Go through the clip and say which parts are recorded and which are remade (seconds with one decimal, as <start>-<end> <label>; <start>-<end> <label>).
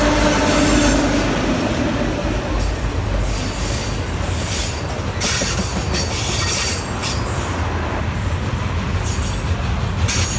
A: 0.0-10.4 recorded